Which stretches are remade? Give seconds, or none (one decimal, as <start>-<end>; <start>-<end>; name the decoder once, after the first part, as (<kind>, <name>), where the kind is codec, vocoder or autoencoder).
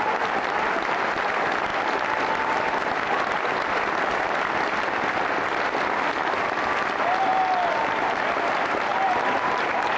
none